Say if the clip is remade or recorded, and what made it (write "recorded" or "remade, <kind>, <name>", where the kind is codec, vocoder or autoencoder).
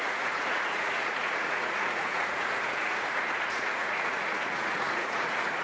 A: remade, vocoder, Vocos